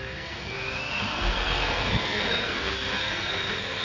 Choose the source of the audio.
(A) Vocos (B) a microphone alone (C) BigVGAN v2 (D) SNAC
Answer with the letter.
D